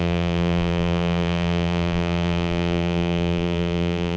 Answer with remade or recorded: remade